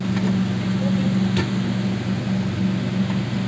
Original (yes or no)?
yes